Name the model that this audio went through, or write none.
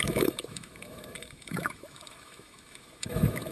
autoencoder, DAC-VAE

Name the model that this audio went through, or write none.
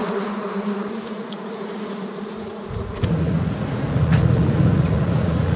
vocoder, Vocos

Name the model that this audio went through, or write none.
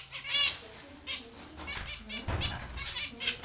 none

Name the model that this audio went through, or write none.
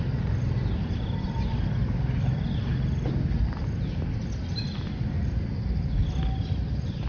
none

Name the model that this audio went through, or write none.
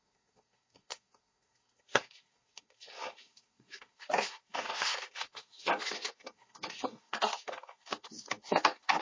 codec, SNAC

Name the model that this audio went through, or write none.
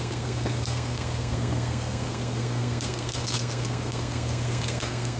codec, SNAC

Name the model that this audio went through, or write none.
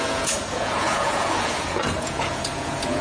vocoder, Vocos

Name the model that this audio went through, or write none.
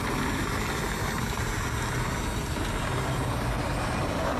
none